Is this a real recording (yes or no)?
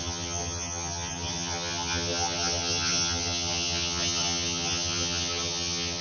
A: no